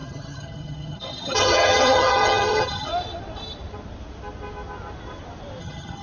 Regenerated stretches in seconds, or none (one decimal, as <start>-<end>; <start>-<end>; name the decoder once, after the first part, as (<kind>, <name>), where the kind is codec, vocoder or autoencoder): 0.0-2.9 (vocoder, HiFi-GAN); 5.6-6.0